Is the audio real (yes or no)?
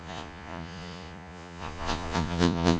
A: no